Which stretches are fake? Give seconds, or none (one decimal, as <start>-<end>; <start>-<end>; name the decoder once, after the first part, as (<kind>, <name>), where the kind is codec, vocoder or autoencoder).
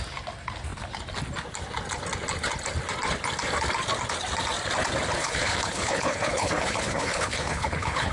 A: 5.2-8.1 (codec, HILCodec)